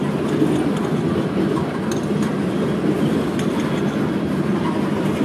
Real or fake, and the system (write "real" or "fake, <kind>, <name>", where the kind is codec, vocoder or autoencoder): real